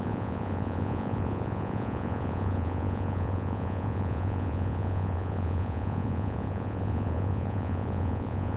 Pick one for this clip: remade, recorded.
remade